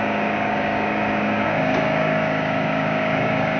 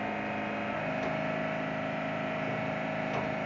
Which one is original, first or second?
second